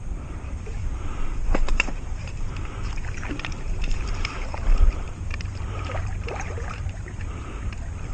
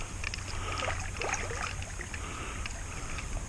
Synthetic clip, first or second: first